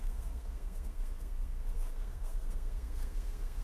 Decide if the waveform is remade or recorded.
remade